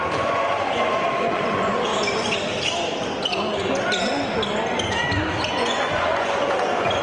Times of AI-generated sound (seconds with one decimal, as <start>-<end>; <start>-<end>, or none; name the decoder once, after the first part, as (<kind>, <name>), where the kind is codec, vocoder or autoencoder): 0.0-1.9 (vocoder, Vocos); 5.5-7.0